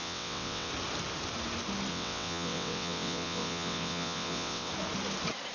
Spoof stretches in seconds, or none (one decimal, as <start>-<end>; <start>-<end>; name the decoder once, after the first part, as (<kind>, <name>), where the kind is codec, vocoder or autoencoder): 0.0-0.7 (vocoder, WaveNeXt); 1.9-4.7